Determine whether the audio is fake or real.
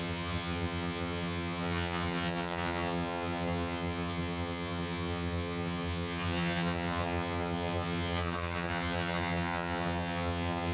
fake